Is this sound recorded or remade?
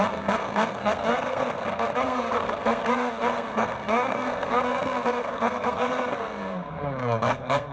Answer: remade